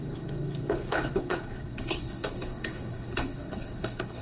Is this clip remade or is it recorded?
remade